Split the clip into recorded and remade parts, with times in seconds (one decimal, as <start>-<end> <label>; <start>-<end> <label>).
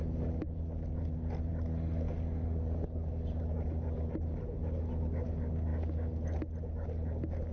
0.0-7.5 recorded